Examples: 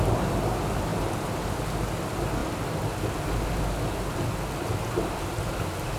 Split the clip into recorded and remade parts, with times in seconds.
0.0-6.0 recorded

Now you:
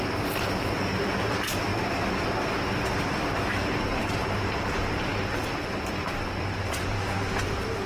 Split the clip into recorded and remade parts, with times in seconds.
0.0-7.9 remade